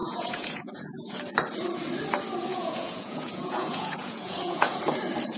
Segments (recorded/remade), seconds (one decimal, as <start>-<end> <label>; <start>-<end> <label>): 0.0-1.2 remade; 1.2-2.5 recorded; 2.5-4.8 remade; 4.8-5.4 recorded